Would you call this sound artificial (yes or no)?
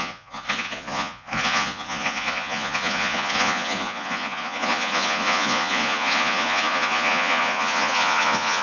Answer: yes